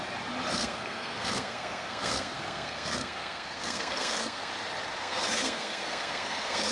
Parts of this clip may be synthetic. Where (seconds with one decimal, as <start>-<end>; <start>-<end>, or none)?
0.5-4.5; 5.0-6.7